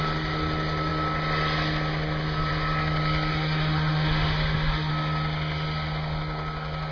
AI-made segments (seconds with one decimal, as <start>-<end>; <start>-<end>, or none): 3.3-4.9